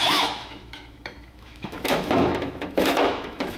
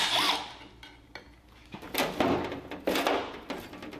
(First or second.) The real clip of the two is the second